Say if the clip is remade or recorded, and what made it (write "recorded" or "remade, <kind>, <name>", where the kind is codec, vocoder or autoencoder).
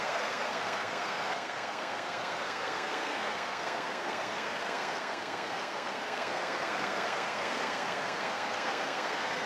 remade, codec, SNAC